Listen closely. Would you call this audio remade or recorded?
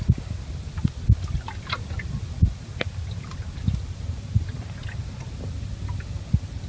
recorded